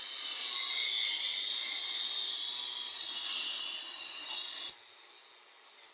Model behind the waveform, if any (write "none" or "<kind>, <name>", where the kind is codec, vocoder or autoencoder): none